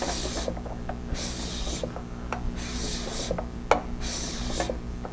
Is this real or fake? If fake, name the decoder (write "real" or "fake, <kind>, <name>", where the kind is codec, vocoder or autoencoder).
real